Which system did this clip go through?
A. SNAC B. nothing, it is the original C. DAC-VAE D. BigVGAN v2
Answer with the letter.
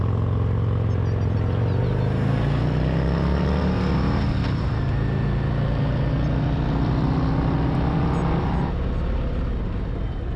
B